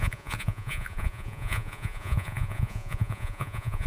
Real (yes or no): no